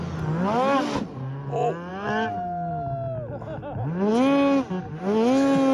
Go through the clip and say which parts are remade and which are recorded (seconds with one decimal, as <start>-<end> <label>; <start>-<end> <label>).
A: 0.0-5.7 recorded

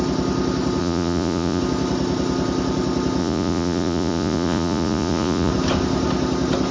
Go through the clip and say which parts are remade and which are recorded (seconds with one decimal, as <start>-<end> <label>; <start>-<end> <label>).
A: 0.0-0.8 recorded; 0.8-1.6 remade; 1.6-3.2 recorded; 3.2-5.5 remade; 5.5-6.7 recorded

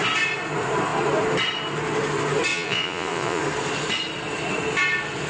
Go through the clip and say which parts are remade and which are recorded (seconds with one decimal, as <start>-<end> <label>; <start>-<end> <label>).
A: 0.0-2.5 recorded; 2.5-3.4 remade; 3.4-5.3 recorded

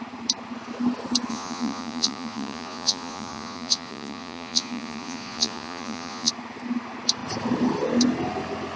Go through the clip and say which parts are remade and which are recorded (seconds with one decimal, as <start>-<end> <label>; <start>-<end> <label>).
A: 0.0-1.3 recorded; 1.3-6.3 remade; 6.3-8.8 recorded

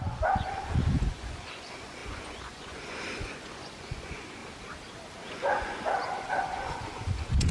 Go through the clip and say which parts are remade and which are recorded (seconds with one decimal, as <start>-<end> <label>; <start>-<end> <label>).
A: 0.0-4.4 remade; 4.4-5.3 recorded; 5.3-7.5 remade

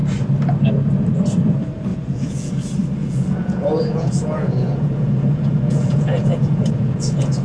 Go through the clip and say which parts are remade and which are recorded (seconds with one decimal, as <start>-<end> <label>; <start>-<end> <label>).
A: 0.0-1.9 recorded; 1.9-2.5 remade; 2.5-3.0 recorded; 3.0-7.4 remade

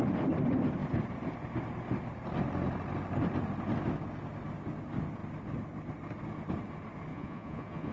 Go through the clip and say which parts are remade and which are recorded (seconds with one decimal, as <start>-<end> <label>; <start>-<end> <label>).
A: 0.0-7.1 recorded; 7.1-7.9 remade

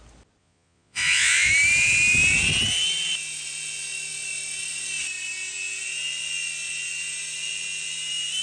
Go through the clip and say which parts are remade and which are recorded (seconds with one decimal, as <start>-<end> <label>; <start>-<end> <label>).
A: 0.0-0.4 recorded; 0.4-1.5 remade; 1.5-8.4 recorded